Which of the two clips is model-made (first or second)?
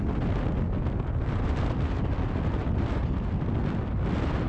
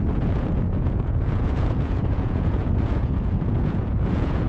second